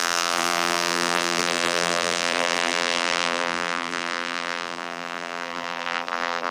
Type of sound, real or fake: fake